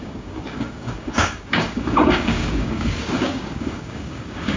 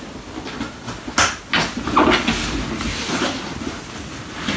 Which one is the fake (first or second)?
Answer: first